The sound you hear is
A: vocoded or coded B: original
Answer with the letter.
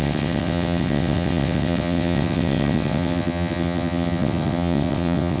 A